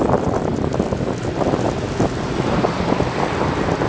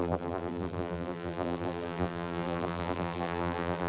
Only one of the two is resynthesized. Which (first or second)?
second